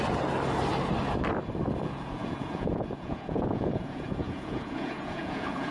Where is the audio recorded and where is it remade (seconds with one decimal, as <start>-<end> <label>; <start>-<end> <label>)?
0.0-1.8 recorded; 1.8-5.7 remade